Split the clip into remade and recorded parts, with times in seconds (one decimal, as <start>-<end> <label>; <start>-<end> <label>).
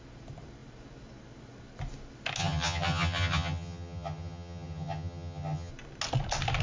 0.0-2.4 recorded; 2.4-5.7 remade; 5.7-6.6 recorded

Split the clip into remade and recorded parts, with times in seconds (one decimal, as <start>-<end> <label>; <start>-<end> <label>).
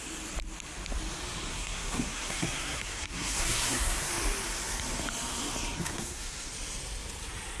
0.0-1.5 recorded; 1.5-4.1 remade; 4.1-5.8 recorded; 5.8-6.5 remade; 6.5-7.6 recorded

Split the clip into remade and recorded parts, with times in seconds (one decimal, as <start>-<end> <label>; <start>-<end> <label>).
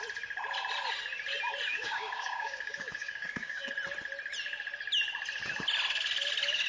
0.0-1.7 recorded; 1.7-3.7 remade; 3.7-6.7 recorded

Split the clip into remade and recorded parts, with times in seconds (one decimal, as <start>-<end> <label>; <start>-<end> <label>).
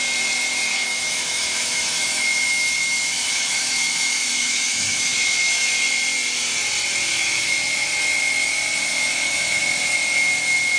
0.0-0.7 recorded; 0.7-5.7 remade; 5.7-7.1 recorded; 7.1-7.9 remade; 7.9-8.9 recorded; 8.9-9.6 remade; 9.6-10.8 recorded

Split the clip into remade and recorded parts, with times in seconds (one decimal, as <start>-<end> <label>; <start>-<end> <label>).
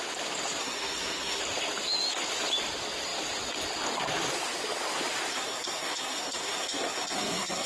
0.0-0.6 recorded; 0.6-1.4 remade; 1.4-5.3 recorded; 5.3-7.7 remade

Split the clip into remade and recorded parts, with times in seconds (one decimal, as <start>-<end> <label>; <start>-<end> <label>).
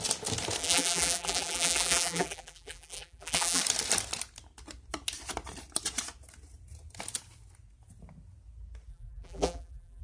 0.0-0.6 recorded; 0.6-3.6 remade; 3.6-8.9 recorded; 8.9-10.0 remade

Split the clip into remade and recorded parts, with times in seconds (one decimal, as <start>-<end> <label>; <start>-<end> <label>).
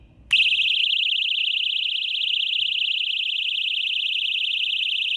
0.0-0.8 recorded; 0.8-1.4 remade; 1.4-5.2 recorded